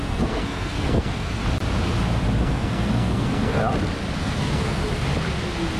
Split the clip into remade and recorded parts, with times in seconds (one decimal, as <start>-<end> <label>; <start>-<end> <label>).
0.0-1.4 remade; 1.4-2.4 recorded; 2.4-3.6 remade; 3.6-4.2 recorded; 4.2-4.8 remade; 4.8-5.8 recorded